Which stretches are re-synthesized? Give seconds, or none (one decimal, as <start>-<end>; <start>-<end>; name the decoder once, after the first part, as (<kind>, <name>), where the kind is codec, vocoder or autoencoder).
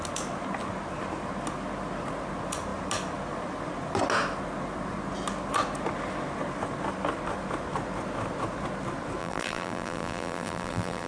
9.2-11.1 (vocoder, BigVGAN v2)